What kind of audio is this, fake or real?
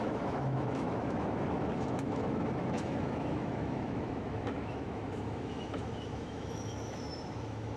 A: fake